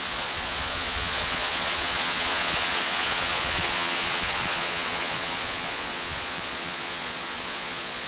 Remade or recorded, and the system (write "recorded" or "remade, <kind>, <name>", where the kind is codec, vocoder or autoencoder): remade, vocoder, Vocos